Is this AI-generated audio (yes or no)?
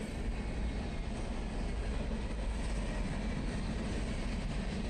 no